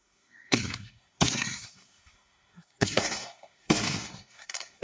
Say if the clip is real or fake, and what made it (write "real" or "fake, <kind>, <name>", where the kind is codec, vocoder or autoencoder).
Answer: fake, codec, SNAC